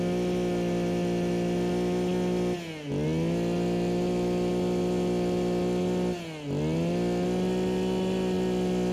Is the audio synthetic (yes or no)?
no